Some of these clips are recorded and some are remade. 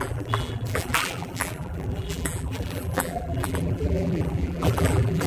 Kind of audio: remade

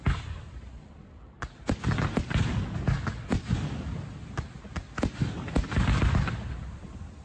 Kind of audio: recorded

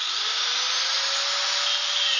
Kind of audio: recorded